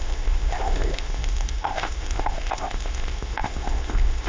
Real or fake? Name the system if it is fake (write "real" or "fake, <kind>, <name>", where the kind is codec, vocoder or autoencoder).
fake, codec, ZipCodec